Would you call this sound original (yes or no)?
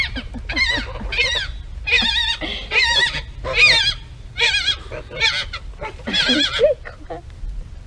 yes